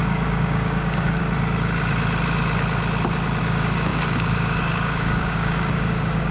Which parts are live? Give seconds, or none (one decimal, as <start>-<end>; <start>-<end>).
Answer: 1.2-3.4